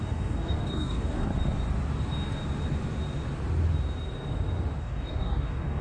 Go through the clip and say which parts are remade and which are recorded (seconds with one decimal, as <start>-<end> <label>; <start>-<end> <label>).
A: 0.0-1.3 remade; 1.3-4.8 recorded; 4.8-5.8 remade